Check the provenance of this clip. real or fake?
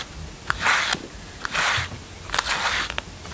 real